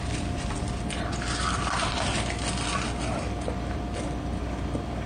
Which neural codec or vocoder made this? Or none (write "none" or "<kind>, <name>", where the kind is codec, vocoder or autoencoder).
vocoder, BigVGAN v2